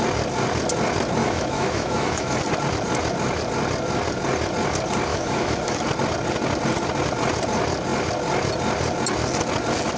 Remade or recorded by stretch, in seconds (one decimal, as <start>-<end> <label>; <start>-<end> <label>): 0.0-1.2 recorded; 1.2-2.3 remade; 2.3-5.1 recorded; 5.1-5.7 remade; 5.7-10.0 recorded